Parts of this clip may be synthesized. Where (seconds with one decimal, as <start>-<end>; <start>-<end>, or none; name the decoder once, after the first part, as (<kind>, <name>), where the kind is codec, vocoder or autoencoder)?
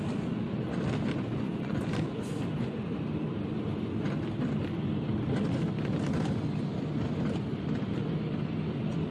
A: 1.3-1.8 (vocoder, Vocos)